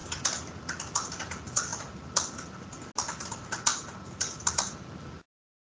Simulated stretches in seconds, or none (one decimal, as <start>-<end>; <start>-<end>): none